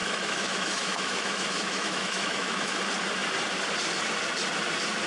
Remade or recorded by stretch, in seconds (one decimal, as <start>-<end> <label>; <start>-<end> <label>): 0.0-2.8 remade; 2.8-5.1 recorded